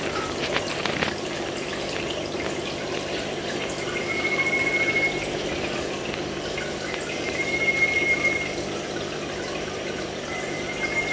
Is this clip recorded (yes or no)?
yes